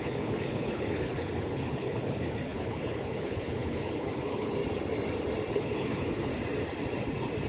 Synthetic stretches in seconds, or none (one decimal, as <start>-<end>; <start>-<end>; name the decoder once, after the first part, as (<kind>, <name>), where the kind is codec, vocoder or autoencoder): 0.0-4.6 (codec, HILCodec); 5.5-6.3